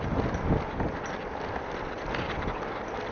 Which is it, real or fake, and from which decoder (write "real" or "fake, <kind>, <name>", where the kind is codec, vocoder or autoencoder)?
real